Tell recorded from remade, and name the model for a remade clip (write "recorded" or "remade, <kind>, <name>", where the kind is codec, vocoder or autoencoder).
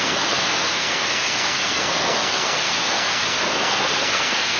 remade, codec, SNAC